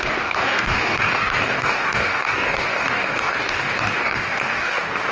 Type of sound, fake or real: fake